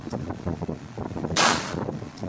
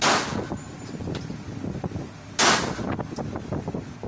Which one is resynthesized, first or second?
first